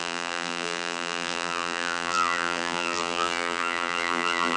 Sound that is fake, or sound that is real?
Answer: fake